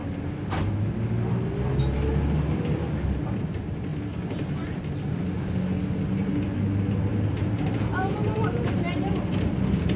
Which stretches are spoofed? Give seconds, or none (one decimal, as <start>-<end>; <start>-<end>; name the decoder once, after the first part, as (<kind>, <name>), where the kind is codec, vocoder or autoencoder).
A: 7.1-9.5 (vocoder, BigVGAN v2)